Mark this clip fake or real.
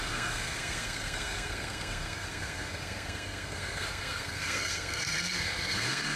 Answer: fake